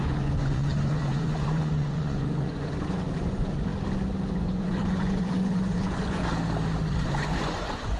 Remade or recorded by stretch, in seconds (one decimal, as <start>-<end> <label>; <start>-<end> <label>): 0.0-3.7 remade; 3.7-4.3 recorded; 4.3-6.2 remade; 6.2-6.9 recorded; 6.9-8.0 remade

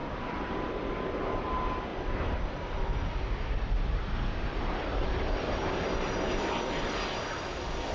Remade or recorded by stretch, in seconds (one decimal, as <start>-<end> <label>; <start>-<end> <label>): 0.0-0.7 remade; 0.7-1.9 recorded; 1.9-6.5 remade; 6.5-7.9 recorded

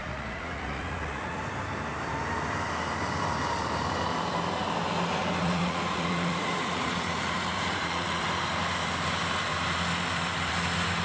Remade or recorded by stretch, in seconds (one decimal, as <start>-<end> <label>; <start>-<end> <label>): 0.0-1.4 remade; 1.4-5.4 recorded; 5.4-8.2 remade; 8.2-11.0 recorded

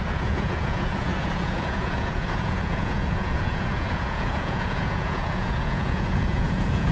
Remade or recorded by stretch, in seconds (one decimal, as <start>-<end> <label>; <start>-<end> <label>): 0.0-6.9 remade